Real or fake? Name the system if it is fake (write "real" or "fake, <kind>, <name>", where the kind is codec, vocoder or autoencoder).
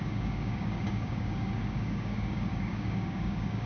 fake, codec, DAC